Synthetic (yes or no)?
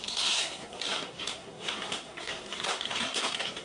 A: yes